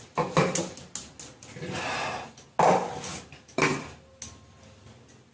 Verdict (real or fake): real